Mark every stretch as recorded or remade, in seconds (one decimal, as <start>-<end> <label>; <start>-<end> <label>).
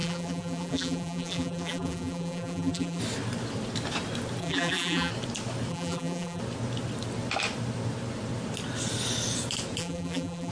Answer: 0.0-3.0 remade; 3.0-4.4 recorded; 4.4-5.1 remade; 5.1-5.7 recorded; 5.7-6.4 remade; 6.4-9.8 recorded; 9.8-10.5 remade